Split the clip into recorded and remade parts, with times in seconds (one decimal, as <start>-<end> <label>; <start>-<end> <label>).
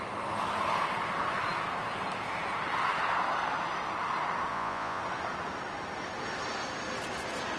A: 0.0-4.5 recorded; 4.5-5.0 remade; 5.0-7.6 recorded